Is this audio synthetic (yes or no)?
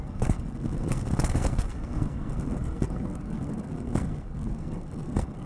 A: yes